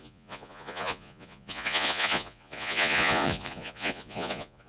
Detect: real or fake fake